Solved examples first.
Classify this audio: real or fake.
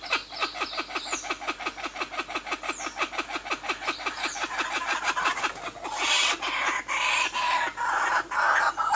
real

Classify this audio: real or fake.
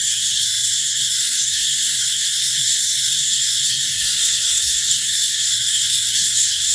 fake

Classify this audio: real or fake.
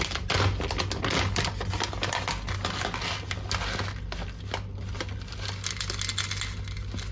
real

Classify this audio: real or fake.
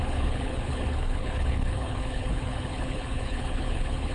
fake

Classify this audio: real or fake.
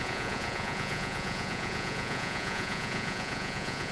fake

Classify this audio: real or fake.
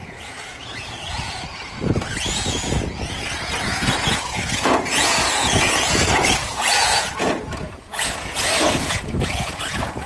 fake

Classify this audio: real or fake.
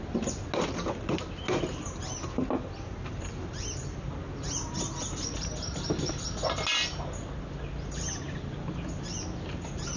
real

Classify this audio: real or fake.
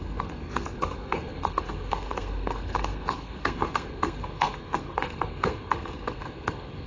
fake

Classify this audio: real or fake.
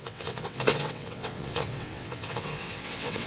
fake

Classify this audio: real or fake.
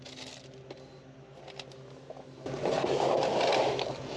real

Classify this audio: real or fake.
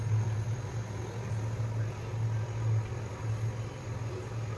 real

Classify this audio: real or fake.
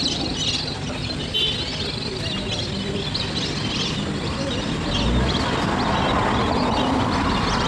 real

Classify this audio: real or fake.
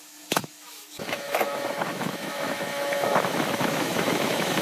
fake